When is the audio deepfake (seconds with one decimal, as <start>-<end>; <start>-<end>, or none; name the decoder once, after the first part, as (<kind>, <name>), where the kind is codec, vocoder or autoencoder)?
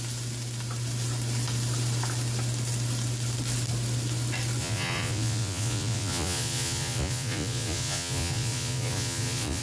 4.6-9.6 (vocoder, Vocos)